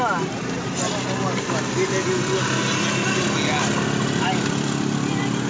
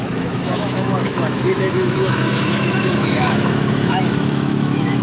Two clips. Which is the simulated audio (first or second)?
second